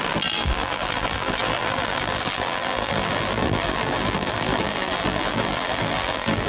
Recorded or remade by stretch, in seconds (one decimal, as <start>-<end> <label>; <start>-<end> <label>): 0.0-6.5 remade